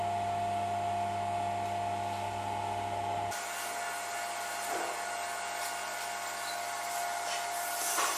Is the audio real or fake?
real